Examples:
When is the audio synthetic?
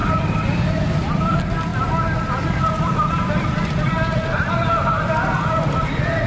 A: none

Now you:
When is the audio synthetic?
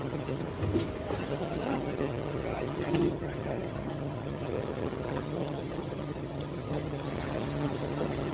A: 0.0-0.5 (vocoder, HiFi-GAN); 1.2-8.3